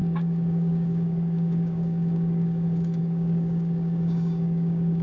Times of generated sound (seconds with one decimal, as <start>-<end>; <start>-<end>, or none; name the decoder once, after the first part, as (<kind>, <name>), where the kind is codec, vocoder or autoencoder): 0.0-5.0 (codec, DAC)